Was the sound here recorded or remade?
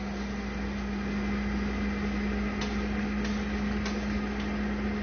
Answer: recorded